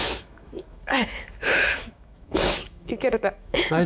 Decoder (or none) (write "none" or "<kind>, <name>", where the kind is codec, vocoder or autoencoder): autoencoder, DAC-VAE